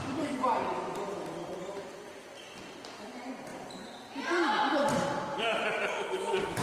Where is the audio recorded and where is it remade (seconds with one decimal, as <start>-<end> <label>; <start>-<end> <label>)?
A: 0.0-6.6 remade